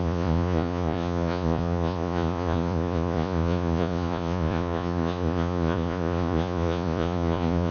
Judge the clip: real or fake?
fake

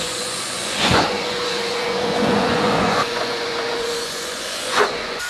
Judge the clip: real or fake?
fake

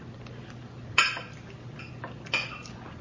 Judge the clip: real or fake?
real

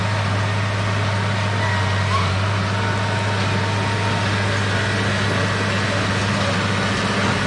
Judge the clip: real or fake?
real